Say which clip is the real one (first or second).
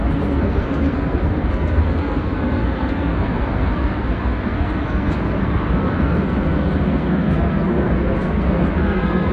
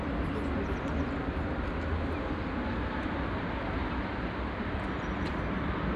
second